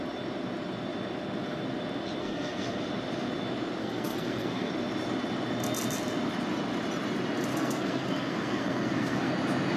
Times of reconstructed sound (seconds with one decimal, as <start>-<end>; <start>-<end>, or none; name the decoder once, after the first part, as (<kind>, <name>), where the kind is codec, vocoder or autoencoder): 2.2-2.8 (codec, SNAC); 3.8-4.7; 7.5-9.3